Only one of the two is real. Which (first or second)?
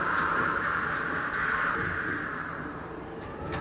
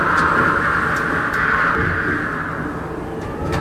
second